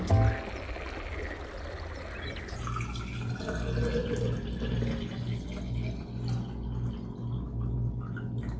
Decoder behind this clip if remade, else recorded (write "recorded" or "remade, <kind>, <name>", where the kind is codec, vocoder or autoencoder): recorded